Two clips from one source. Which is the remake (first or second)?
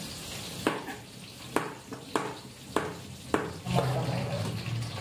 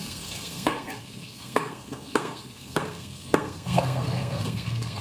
second